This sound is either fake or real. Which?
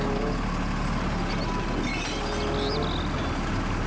real